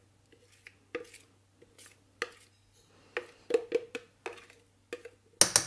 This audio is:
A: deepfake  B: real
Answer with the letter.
B